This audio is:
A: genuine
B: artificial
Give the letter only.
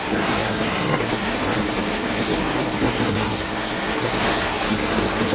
B